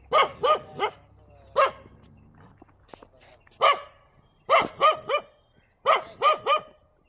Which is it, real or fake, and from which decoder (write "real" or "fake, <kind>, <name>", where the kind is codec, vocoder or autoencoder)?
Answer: real